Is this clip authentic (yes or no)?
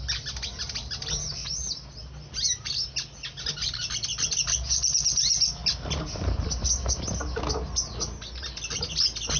yes